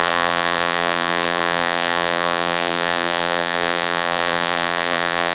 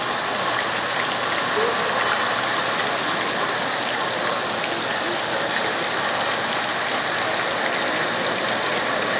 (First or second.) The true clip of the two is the second